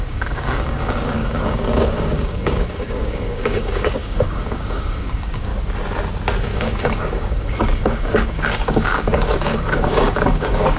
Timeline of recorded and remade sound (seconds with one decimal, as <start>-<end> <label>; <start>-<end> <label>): 0.0-5.5 remade; 5.5-6.4 recorded; 6.4-10.8 remade